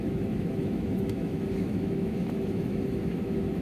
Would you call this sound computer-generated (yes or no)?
yes